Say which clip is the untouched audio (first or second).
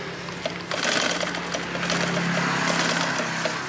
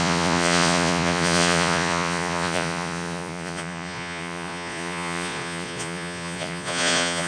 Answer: first